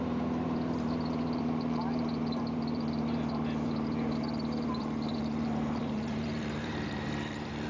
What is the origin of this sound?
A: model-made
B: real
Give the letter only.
A